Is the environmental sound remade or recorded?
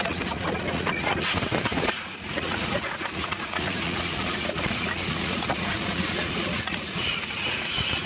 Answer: remade